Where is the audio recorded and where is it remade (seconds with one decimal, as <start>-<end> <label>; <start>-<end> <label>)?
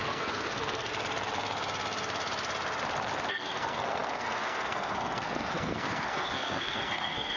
0.0-0.9 remade; 0.9-3.3 recorded; 3.3-7.4 remade